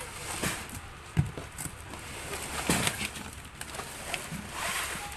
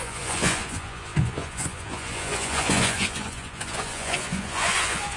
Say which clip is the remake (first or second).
second